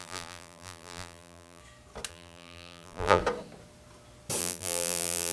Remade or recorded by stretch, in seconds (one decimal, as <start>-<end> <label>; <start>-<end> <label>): 0.0-1.6 remade; 1.6-2.1 recorded; 2.1-3.2 remade; 3.2-4.4 recorded; 4.4-5.3 remade